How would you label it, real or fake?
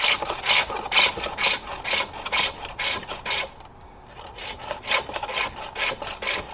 real